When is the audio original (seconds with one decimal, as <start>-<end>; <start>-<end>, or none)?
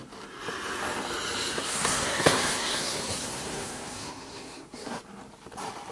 0.0-1.5; 5.0-5.9